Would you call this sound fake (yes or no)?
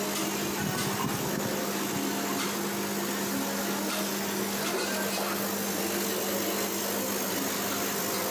no